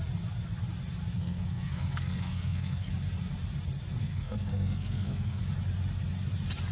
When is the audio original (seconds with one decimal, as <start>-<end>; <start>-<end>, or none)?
0.0-1.1; 2.9-4.0; 5.4-6.7